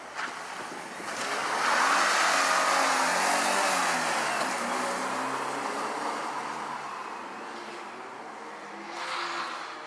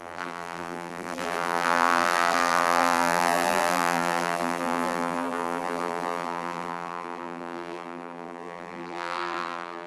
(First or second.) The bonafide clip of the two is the first